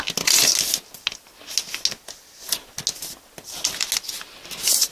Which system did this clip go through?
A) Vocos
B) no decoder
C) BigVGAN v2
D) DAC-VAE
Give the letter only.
B